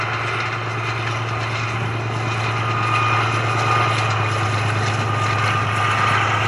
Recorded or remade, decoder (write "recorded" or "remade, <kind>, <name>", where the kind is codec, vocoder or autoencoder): recorded